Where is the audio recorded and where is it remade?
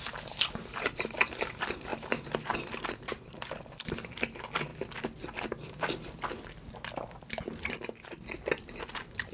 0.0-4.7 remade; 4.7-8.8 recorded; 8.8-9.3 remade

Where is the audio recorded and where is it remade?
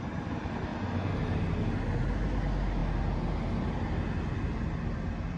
0.0-5.4 recorded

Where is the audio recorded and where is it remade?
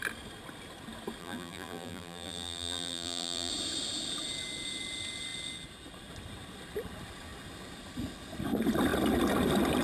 0.0-1.2 recorded; 1.2-3.5 remade; 3.5-9.8 recorded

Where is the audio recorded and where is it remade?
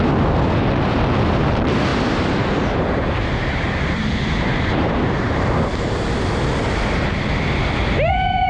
0.0-1.9 recorded; 1.9-5.5 remade; 5.5-8.5 recorded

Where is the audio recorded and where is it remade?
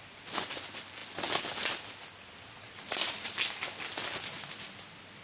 0.0-5.2 recorded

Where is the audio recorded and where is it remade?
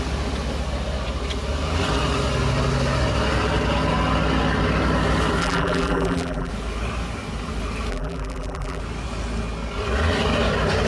0.0-5.4 recorded; 5.4-6.5 remade; 6.5-7.9 recorded; 7.9-8.8 remade; 8.8-10.9 recorded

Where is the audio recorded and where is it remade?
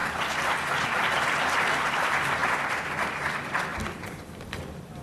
0.0-2.4 remade; 2.4-3.1 recorded; 3.1-5.0 remade